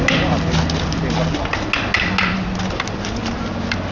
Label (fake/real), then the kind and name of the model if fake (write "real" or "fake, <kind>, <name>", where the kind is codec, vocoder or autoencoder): real